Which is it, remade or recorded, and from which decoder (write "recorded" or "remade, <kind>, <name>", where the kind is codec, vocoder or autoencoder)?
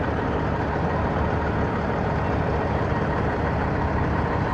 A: remade, vocoder, BigVGAN v2